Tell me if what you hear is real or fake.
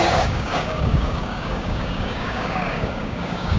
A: fake